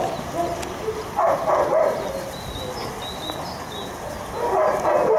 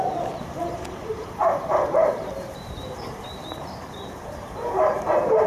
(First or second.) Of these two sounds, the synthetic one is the second